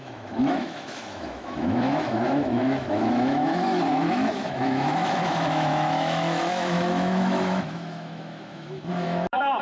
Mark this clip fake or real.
fake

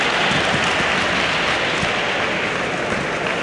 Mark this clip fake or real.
real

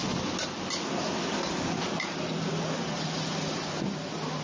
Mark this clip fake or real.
real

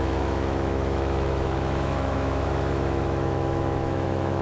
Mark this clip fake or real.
fake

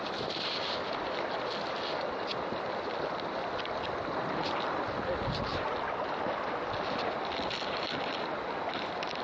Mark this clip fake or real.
real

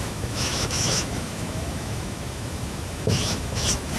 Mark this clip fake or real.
fake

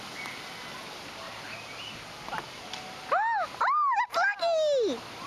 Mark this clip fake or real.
real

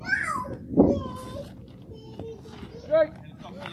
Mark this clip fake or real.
real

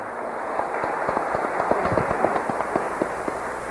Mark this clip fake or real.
real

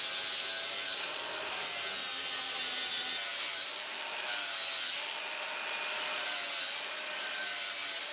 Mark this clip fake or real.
real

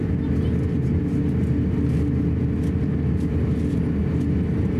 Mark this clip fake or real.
real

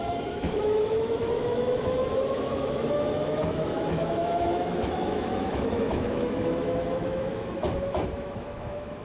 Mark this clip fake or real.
fake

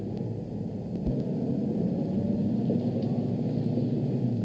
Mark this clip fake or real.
real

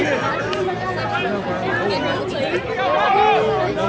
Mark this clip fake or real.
real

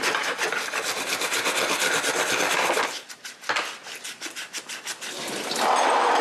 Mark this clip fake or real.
real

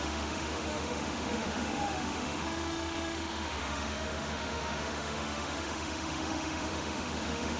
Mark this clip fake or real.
fake